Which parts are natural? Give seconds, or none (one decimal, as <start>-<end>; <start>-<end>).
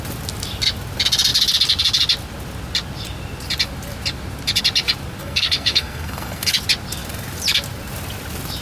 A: 0.0-5.2; 6.5-8.6